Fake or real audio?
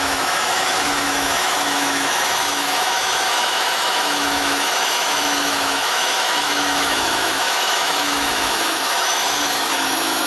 fake